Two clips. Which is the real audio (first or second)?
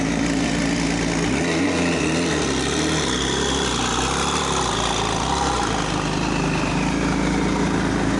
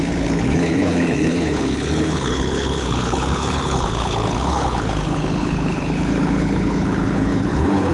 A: first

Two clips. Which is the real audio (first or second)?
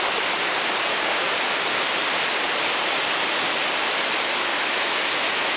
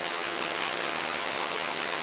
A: first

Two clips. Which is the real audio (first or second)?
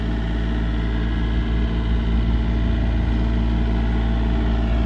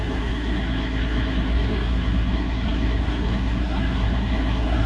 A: first